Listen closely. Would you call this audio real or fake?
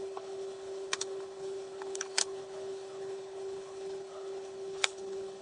fake